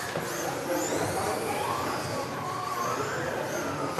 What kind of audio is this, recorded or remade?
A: remade